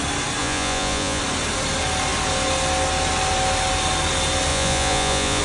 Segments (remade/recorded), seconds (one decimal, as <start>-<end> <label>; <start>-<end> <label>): 0.0-0.4 recorded; 0.4-1.2 remade; 1.2-4.5 recorded; 4.5-5.4 remade